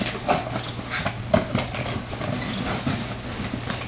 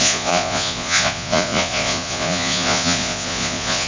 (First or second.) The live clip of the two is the first